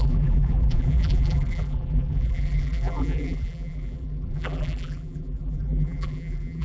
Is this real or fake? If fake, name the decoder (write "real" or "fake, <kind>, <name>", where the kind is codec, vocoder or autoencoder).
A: fake, vocoder, BigVGAN v2